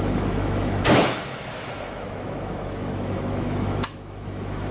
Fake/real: fake